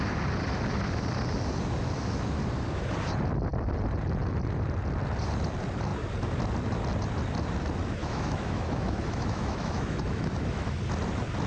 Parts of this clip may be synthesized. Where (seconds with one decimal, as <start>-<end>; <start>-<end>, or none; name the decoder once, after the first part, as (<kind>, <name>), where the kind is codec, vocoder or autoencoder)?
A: 8.0-10.8 (autoencoder, DAC-VAE)